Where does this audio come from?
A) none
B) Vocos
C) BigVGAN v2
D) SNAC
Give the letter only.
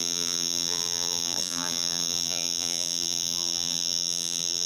C